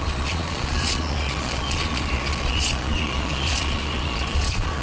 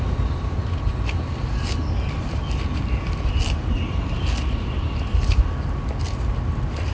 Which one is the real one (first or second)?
second